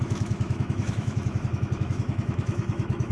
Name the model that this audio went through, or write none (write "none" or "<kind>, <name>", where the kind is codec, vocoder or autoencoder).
autoencoder, DAC-VAE